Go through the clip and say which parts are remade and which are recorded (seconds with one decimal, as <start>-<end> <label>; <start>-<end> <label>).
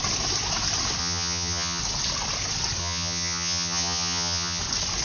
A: 0.0-1.0 recorded; 1.0-1.8 remade; 1.8-2.8 recorded; 2.8-4.6 remade; 4.6-5.0 recorded